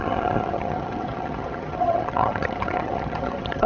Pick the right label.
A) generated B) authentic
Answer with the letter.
A